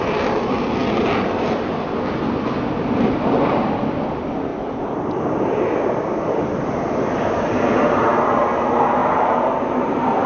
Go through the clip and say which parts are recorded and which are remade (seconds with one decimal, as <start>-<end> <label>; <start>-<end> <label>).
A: 0.0-4.5 recorded; 4.5-8.0 remade; 8.0-10.3 recorded